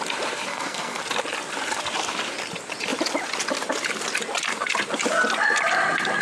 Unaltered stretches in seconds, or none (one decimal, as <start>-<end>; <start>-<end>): 0.0-0.5; 1.0-6.2